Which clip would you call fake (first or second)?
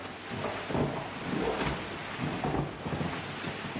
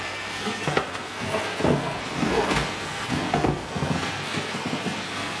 second